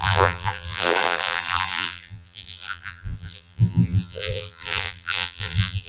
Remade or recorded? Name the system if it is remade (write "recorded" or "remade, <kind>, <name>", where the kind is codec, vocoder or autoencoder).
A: remade, vocoder, BigVGAN v2